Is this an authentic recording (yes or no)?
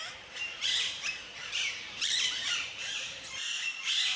no